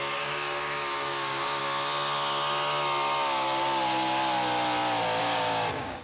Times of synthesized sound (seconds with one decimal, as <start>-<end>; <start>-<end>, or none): 0.0-1.6; 5.2-6.0